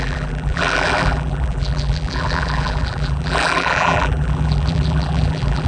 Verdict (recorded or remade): remade